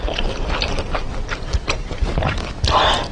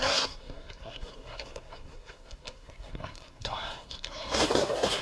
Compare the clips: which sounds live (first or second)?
first